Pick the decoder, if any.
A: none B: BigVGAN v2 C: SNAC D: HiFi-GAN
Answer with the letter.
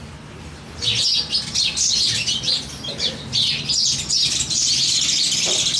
A